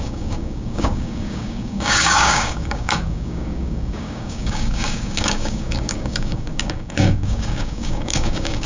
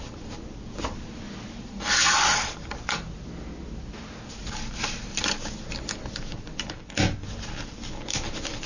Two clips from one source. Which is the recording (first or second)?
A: second